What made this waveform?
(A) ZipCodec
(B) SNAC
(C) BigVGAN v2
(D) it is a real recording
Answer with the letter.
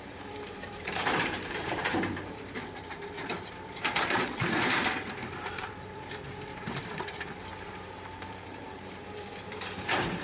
C